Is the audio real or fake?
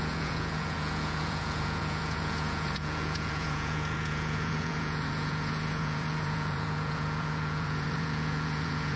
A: fake